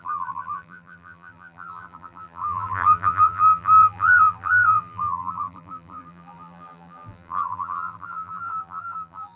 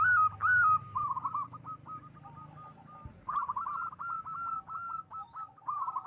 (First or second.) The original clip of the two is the second